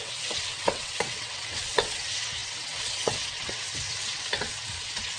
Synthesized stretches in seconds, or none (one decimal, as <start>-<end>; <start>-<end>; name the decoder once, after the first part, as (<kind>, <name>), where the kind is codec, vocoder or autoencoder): 0.0-5.2 (vocoder, WaveNeXt)